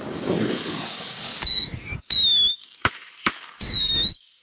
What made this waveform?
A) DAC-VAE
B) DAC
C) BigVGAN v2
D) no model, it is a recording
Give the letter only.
B